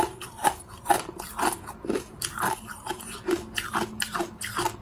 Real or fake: real